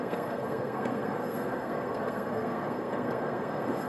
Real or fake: fake